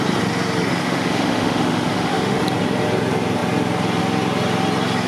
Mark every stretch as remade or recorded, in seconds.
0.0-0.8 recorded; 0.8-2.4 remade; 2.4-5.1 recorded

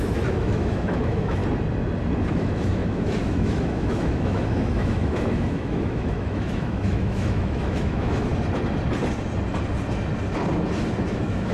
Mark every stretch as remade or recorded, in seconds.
0.0-1.4 remade; 1.4-2.3 recorded; 2.3-8.3 remade; 8.3-11.1 recorded; 11.1-11.5 remade

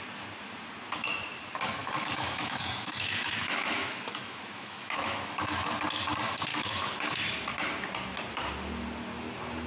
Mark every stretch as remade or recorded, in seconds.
0.0-1.8 recorded; 1.8-5.7 remade; 5.7-6.5 recorded; 6.5-7.1 remade; 7.1-9.7 recorded

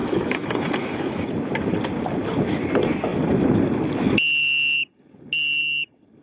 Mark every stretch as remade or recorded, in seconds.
0.0-1.3 remade; 1.3-6.2 recorded

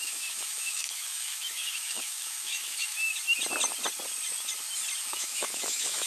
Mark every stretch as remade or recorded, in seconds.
0.0-3.1 remade; 3.1-5.0 recorded; 5.0-6.1 remade

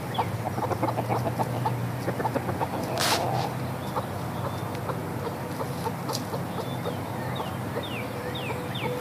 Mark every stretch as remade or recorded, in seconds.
0.0-9.0 recorded